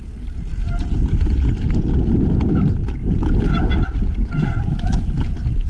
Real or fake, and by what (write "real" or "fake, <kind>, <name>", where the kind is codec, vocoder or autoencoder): real